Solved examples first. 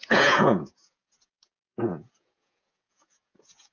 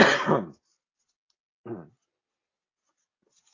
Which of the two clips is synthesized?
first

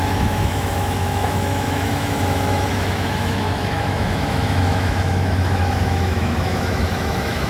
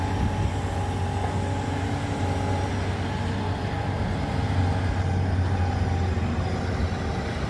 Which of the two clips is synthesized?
first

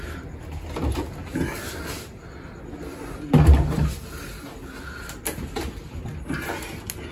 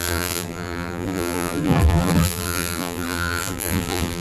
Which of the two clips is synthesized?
second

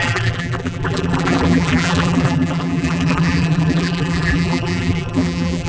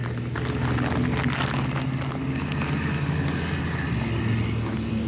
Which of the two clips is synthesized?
first